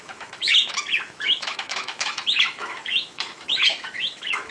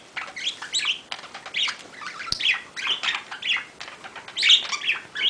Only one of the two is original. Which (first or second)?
second